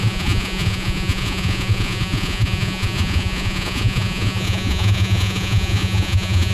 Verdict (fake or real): fake